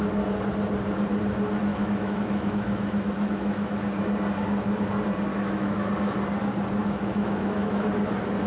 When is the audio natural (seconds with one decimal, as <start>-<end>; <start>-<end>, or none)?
0.0-1.7; 4.0-5.3; 5.9-6.8; 7.9-8.5